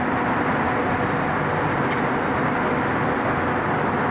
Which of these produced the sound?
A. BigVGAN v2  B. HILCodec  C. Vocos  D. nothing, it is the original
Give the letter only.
D